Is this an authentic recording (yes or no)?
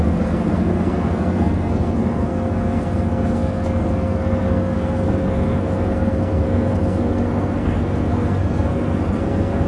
no